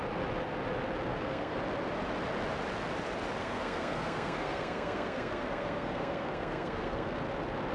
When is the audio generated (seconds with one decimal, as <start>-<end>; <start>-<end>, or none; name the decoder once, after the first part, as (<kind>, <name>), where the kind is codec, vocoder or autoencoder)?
1.1-1.6 (codec, SNAC); 3.4-7.2